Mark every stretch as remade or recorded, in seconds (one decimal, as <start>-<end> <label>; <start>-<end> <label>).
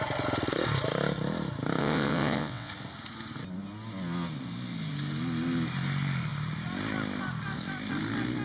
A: 0.0-1.8 recorded; 1.8-2.7 remade; 2.7-8.4 recorded